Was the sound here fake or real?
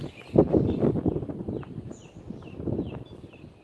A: real